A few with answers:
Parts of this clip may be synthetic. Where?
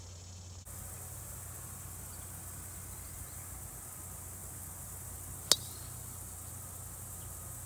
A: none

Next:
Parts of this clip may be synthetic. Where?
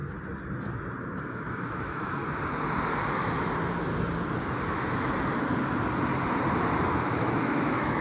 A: 1.2-2.2 (autoencoder, DAC-VAE); 6.9-8.0